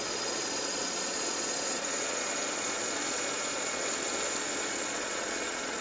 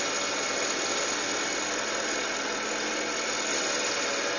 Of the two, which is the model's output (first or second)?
first